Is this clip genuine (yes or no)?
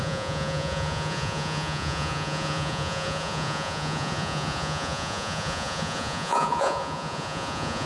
no